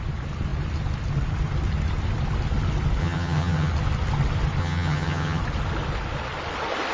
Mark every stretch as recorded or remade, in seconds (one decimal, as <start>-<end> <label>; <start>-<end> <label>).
0.0-3.0 recorded; 3.0-3.7 remade; 3.7-4.6 recorded; 4.6-5.4 remade; 5.4-6.9 recorded